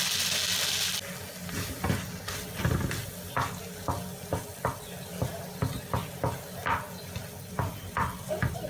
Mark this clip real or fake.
real